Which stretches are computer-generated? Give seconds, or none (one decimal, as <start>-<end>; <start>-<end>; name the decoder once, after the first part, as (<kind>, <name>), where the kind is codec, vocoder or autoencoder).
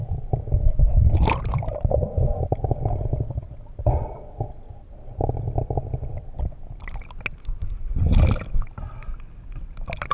none